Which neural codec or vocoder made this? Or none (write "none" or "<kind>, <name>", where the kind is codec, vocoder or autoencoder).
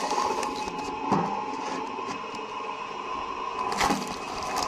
none